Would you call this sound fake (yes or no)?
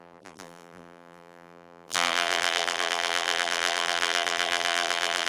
yes